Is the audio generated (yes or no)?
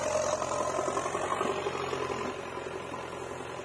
no